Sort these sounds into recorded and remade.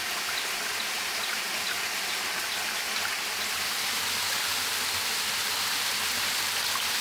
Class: recorded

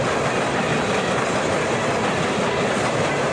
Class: recorded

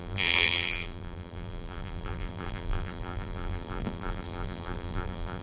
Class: remade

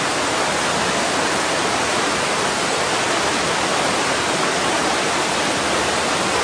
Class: recorded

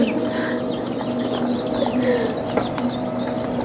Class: recorded